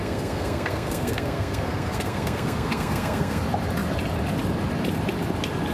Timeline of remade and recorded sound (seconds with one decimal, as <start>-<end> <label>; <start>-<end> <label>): 0.0-3.4 remade; 3.4-5.7 recorded